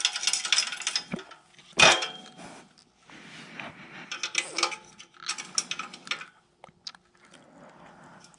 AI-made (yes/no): no